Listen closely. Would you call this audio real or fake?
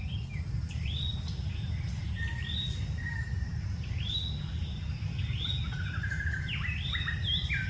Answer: real